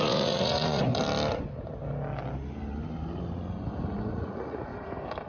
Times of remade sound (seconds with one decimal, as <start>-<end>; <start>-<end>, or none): 0.0-0.9; 4.1-4.7